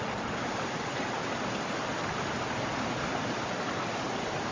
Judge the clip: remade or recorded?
recorded